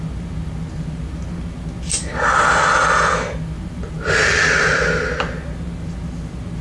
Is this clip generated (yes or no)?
no